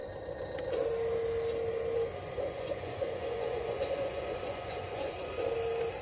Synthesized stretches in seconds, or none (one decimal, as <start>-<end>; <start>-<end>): 2.2-5.3